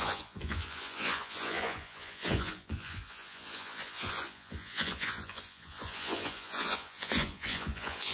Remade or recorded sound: remade